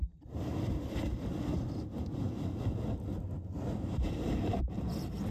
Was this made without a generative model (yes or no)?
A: yes